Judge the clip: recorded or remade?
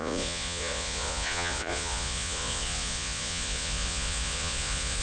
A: remade